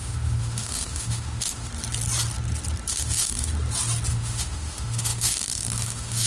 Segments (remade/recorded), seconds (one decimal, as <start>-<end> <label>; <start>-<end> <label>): 0.0-1.7 remade; 1.7-2.9 recorded; 2.9-3.5 remade; 3.5-4.1 recorded; 4.1-6.3 remade